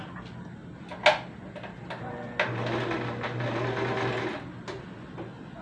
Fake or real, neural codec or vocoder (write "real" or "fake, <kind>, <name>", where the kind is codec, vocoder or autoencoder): real